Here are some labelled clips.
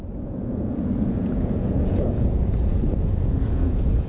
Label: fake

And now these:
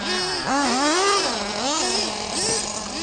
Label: real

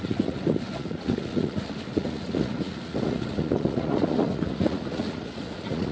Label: fake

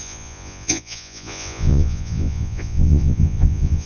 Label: fake